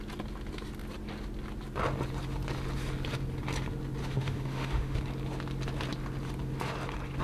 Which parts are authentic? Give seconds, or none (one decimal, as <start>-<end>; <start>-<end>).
0.0-4.0; 5.0-7.2